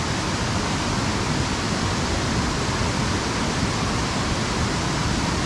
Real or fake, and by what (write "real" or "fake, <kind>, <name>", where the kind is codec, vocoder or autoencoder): real